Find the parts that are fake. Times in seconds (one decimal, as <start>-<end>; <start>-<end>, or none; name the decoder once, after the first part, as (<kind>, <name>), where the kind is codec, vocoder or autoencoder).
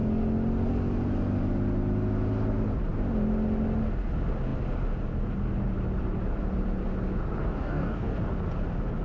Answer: 7.4-8.1 (codec, DAC)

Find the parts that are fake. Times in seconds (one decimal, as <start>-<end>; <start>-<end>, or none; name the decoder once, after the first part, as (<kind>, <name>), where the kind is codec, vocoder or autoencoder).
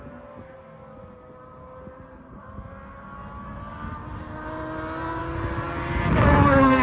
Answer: none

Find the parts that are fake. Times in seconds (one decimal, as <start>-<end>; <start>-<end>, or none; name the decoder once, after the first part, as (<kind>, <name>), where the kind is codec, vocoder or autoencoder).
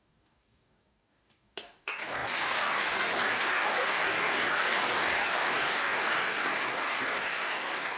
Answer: 0.0-8.0 (codec, DAC)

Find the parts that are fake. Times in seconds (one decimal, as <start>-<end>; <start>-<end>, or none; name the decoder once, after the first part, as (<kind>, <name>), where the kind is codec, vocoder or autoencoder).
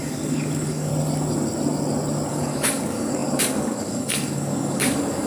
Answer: 0.0-0.9 (codec, DAC); 2.3-5.3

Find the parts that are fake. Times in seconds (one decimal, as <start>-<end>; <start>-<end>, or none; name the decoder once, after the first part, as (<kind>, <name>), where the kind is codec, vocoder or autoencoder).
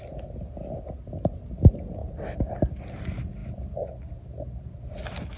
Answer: none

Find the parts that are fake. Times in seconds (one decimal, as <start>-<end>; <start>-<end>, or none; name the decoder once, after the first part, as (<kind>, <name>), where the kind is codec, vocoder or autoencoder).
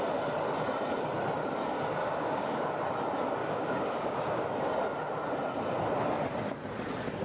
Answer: 2.0-2.7 (codec, DAC); 3.4-4.4